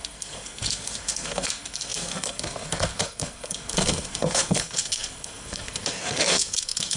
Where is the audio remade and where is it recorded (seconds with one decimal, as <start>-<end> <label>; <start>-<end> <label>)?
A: 0.0-7.0 remade